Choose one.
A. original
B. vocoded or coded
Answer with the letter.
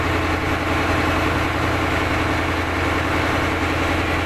A